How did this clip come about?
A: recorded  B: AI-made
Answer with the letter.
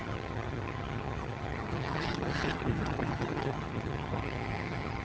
B